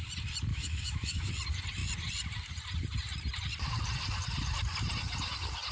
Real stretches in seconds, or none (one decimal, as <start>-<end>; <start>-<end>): 0.0-0.5; 1.3-5.7